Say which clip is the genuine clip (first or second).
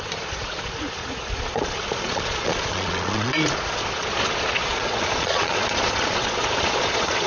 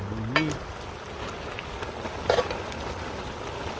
second